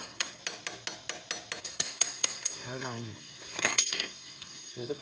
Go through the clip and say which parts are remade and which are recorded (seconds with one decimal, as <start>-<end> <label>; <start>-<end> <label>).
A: 0.0-0.4 remade; 0.4-1.6 recorded; 1.6-5.0 remade